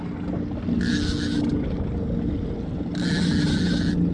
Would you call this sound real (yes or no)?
yes